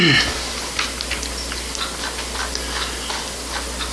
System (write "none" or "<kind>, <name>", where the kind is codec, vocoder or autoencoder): none